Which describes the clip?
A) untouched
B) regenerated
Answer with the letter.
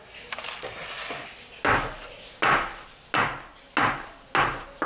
A